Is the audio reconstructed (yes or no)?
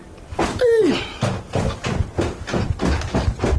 no